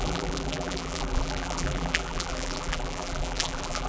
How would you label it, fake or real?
fake